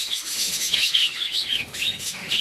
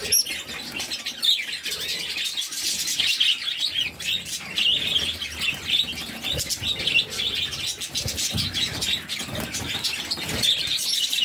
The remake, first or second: first